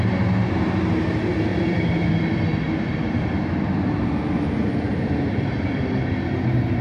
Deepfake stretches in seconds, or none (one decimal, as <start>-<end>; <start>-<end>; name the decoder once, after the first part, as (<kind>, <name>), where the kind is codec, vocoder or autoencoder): 1.5-2.1 (vocoder, BigVGAN v2); 3.0-3.5; 4.9-5.8